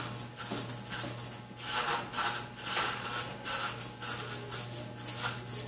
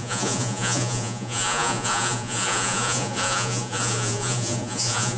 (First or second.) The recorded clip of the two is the first